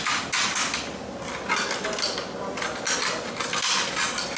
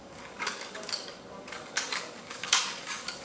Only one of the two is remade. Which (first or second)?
second